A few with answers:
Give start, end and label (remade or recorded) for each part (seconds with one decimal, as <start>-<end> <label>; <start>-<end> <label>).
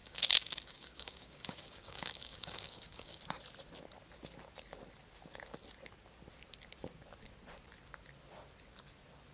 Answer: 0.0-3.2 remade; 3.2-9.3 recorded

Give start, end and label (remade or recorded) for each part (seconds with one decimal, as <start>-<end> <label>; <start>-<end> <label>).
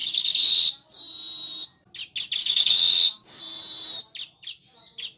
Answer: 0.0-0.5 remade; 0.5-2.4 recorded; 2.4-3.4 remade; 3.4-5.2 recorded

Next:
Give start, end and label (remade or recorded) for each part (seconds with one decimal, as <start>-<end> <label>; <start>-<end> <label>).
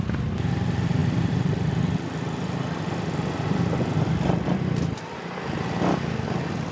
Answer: 0.0-6.7 recorded